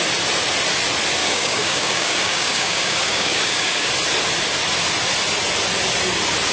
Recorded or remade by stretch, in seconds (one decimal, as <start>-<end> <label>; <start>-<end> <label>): 0.0-1.2 recorded; 1.2-3.9 remade; 3.9-6.5 recorded